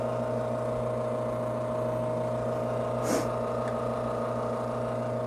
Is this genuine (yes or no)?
yes